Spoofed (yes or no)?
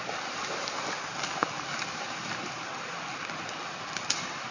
no